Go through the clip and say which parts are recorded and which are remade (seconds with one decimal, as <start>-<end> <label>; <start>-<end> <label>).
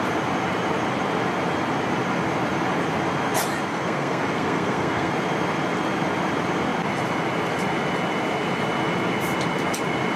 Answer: 0.0-3.7 recorded; 3.7-5.1 remade; 5.1-10.2 recorded